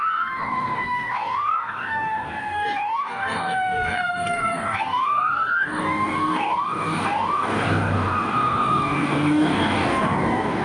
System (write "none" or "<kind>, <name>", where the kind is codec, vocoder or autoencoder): codec, DAC